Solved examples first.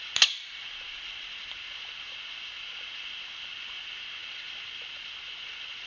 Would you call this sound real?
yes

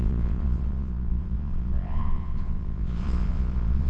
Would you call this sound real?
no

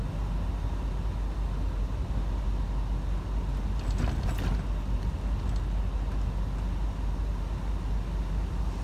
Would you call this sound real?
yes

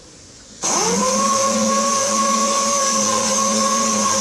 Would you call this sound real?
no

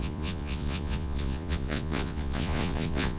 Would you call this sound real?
no